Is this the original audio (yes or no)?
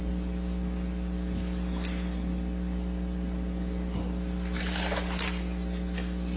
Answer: yes